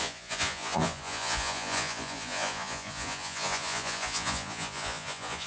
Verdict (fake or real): fake